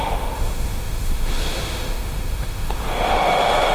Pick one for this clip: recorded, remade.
remade